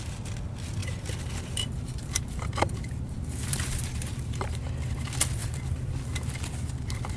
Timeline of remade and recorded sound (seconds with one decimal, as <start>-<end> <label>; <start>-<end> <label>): 0.0-0.8 recorded; 0.8-4.7 remade; 4.7-5.4 recorded; 5.4-5.9 remade; 5.9-7.2 recorded